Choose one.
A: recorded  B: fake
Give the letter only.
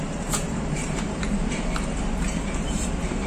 B